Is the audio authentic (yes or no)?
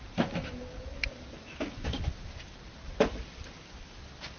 yes